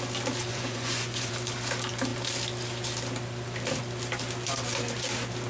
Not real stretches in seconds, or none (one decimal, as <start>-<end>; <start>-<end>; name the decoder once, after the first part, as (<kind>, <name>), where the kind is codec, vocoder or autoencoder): 0.5-1.3 (vocoder, Vocos)

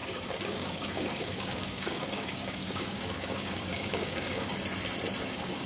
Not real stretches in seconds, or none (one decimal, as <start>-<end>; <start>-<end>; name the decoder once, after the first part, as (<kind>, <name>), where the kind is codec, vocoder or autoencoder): 0.0-4.5 (codec, DAC); 5.2-5.7

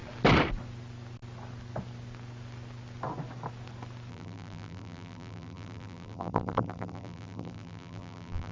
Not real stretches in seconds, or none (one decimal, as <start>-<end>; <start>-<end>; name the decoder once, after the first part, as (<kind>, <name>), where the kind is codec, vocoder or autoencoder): 4.1-8.5 (vocoder, BigVGAN v2)

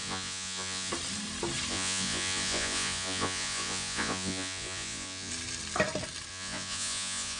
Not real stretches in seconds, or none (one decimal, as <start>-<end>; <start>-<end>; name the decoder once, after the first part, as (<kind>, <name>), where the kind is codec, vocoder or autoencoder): 0.0-0.9 (vocoder, Vocos); 1.7-5.3; 6.3-7.4

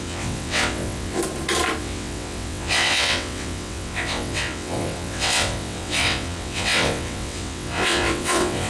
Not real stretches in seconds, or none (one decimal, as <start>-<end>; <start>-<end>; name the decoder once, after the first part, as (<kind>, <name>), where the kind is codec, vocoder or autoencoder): 0.0-1.2 (vocoder, WaveNeXt); 1.8-8.7

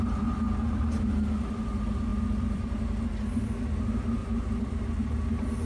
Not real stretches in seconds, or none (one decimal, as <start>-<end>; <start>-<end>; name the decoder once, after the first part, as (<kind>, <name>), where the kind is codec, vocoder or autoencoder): 2.1-2.8 (vocoder, BigVGAN v2); 4.2-4.8